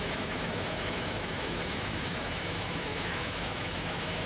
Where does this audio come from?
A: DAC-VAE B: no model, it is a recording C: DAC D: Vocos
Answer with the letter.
A